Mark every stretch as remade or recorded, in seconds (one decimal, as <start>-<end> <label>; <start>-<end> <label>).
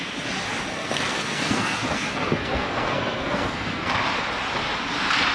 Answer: 0.0-0.7 recorded; 0.7-3.9 remade; 3.9-5.3 recorded